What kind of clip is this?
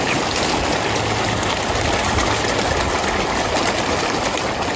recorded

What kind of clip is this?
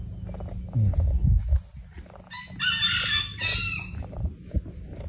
recorded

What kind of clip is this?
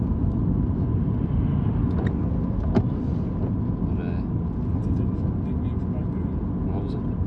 recorded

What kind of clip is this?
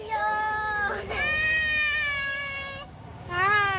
remade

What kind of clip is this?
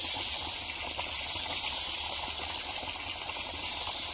recorded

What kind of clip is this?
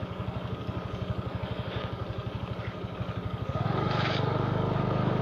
remade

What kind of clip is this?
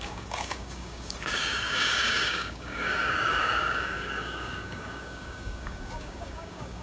remade